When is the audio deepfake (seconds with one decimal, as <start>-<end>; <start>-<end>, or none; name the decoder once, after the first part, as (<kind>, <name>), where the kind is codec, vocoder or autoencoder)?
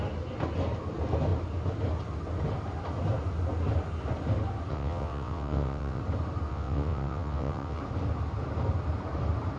4.7-6.0 (vocoder, WaveNeXt); 6.5-7.8